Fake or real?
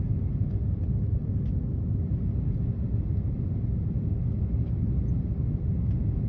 real